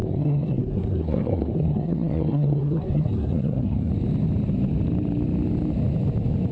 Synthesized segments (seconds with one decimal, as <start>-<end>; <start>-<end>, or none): 0.0-3.9